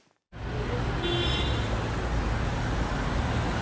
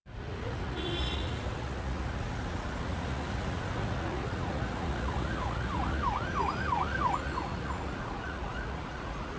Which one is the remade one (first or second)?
second